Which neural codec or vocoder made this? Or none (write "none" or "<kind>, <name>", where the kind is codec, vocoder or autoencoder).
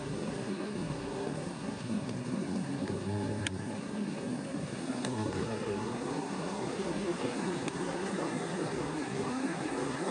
codec, SNAC